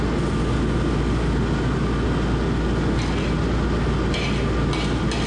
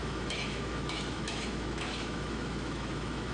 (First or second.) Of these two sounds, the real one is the first